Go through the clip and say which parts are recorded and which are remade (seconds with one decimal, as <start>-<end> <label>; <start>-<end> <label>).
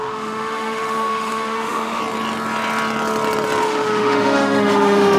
0.0-2.0 remade; 2.0-3.6 recorded; 3.6-5.2 remade